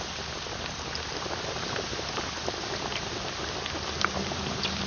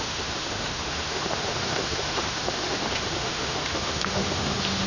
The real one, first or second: first